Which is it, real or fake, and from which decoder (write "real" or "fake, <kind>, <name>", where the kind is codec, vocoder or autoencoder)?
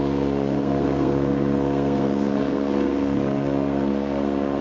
fake, codec, SNAC